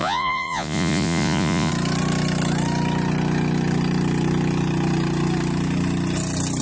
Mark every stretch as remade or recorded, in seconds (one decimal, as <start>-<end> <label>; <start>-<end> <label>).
0.0-1.7 remade; 1.7-6.6 recorded

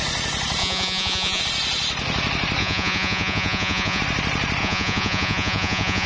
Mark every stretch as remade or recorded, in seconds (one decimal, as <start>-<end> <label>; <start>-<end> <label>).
0.0-0.6 recorded; 0.6-1.4 remade; 1.4-2.6 recorded; 2.6-4.0 remade; 4.0-4.6 recorded; 4.6-6.1 remade